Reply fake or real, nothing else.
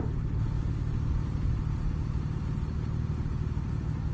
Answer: real